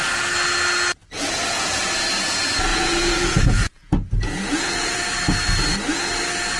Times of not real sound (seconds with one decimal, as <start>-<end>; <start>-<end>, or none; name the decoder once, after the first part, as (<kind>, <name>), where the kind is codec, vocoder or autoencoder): 1.0-1.9 (vocoder, Vocos); 2.7-5.0